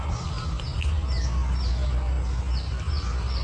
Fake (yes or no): no